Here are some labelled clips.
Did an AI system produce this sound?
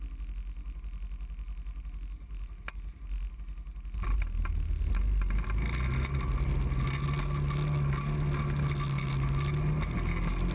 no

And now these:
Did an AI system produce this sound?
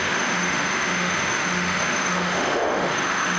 yes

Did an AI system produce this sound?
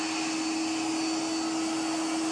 no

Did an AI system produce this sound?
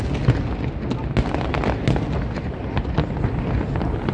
no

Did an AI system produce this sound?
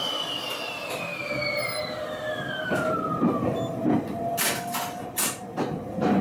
no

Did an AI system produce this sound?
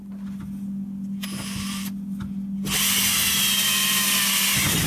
no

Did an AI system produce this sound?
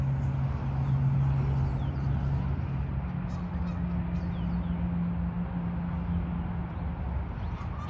no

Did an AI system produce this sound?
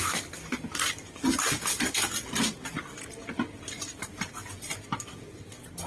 no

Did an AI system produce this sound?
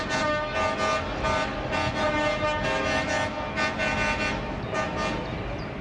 no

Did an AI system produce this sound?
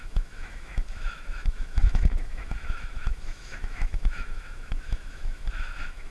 yes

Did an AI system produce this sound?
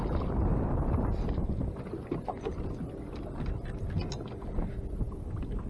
no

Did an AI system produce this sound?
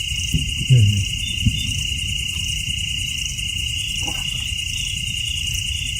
no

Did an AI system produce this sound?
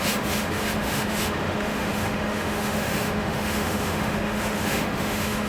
yes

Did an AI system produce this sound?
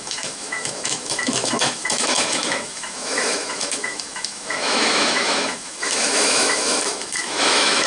yes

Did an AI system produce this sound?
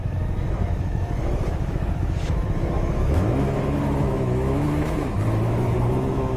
yes